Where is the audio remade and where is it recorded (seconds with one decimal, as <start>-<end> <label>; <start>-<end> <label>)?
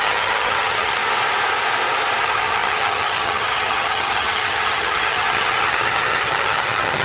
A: 0.0-1.0 remade; 1.0-2.2 recorded; 2.2-7.0 remade